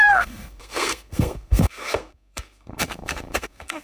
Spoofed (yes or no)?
yes